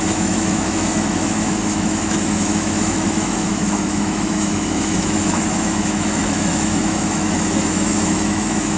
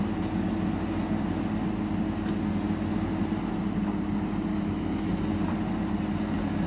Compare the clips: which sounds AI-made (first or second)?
first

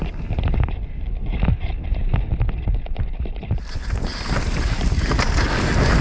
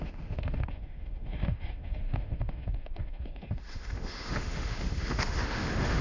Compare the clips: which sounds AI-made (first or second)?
second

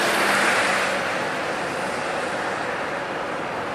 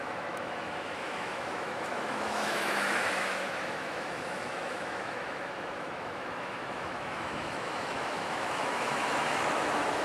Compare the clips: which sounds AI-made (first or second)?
second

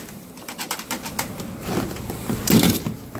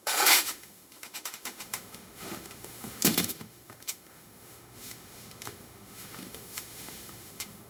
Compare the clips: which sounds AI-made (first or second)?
second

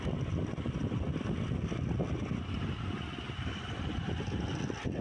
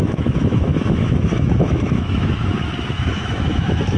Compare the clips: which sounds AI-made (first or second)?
second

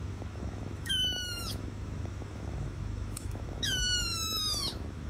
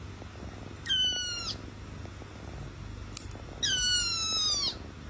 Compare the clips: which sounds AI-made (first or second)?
first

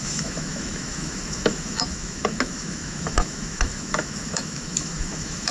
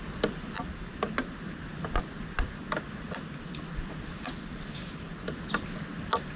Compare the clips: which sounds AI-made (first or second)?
first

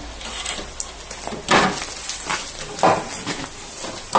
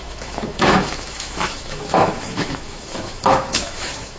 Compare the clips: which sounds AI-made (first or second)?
second